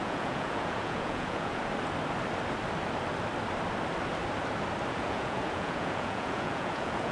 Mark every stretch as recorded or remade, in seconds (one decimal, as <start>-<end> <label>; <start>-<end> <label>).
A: 0.0-1.6 remade; 1.6-4.9 recorded; 4.9-7.1 remade